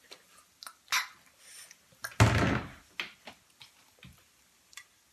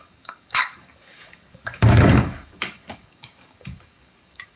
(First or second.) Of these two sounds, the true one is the first